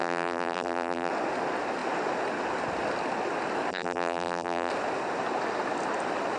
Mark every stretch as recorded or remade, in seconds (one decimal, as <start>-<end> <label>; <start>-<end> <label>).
0.0-1.1 remade; 1.1-3.7 recorded; 3.7-4.7 remade; 4.7-6.4 recorded